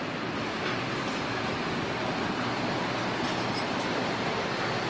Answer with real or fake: real